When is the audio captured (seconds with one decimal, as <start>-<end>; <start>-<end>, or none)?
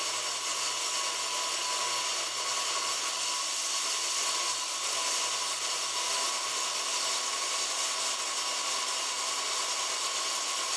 0.0-10.8